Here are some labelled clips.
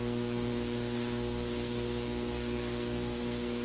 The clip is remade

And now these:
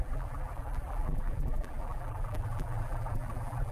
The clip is remade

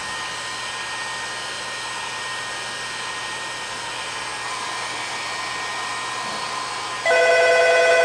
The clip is recorded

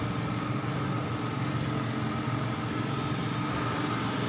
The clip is recorded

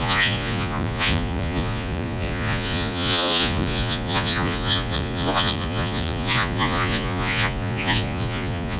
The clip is remade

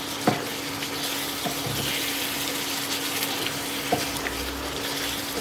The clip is recorded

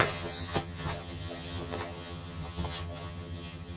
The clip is remade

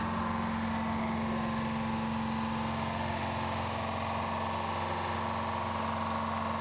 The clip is recorded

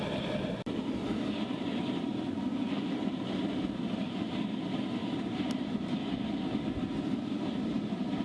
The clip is remade